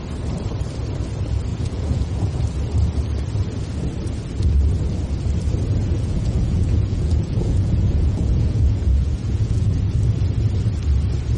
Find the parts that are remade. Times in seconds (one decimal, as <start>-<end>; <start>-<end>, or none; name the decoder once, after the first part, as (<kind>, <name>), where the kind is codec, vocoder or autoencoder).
1.5-2.4 (vocoder, Vocos); 5.8-9.8